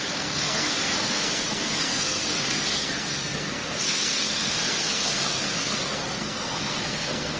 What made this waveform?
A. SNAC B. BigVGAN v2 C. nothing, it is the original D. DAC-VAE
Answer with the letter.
A